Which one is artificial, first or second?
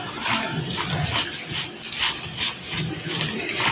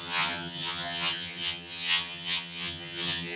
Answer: second